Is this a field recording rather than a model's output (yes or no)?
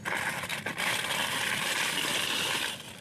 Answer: yes